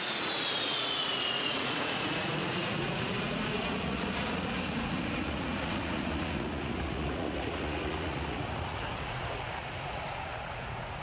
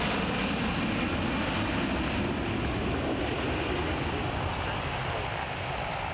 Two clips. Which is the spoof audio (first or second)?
first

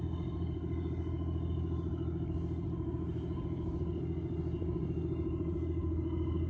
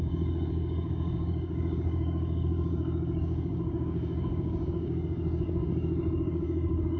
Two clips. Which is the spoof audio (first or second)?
second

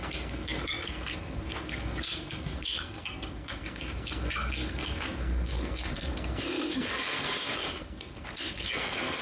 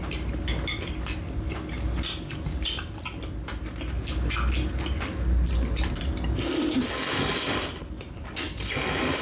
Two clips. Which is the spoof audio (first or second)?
first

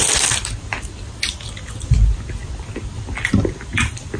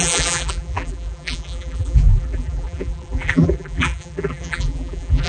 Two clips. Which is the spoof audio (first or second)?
second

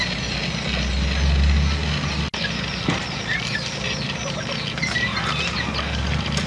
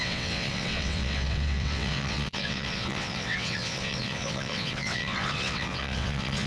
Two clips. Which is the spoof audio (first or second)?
second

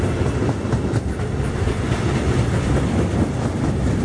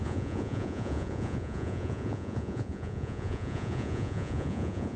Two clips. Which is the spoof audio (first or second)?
second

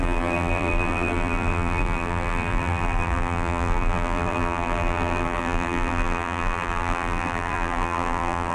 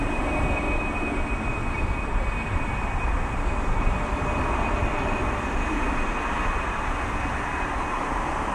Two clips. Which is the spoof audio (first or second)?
first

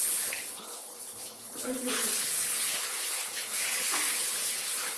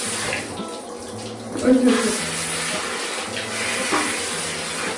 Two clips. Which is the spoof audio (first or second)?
first